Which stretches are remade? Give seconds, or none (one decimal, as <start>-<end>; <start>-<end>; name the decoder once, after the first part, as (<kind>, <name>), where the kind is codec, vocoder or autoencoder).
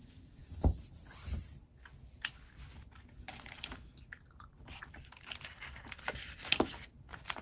none